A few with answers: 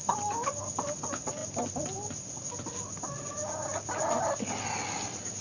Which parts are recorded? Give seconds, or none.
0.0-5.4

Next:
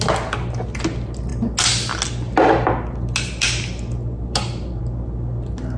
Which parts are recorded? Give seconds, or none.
0.0-5.8